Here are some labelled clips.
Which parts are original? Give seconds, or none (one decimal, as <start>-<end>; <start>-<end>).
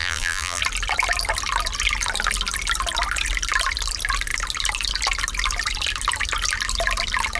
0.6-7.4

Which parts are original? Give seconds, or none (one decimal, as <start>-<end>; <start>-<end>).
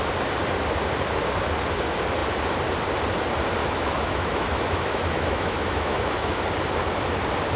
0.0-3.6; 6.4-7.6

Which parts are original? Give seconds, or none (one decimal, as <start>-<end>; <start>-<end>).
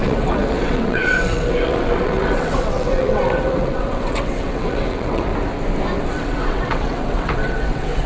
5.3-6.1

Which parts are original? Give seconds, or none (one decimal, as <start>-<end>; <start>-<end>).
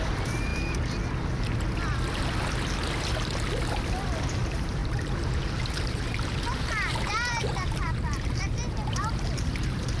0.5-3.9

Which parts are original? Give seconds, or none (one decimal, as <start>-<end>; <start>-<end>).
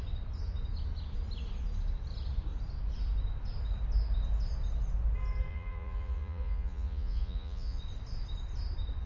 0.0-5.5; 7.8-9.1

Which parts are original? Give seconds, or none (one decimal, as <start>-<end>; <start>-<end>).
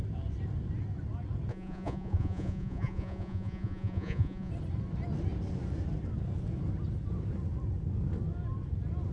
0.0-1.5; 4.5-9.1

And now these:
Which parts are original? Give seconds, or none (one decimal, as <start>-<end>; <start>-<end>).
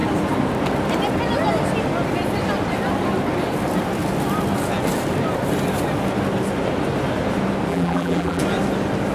0.0-7.7; 8.4-9.1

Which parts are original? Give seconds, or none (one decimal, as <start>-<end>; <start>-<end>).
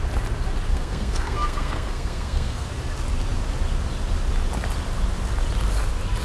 0.0-0.7; 2.7-6.2